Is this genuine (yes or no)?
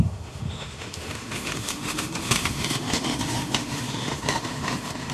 no